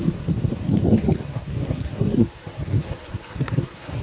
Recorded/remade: remade